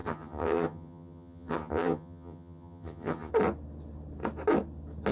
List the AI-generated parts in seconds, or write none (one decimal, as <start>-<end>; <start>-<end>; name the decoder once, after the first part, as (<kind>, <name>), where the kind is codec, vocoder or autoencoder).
0.0-3.3 (vocoder, HiFi-GAN)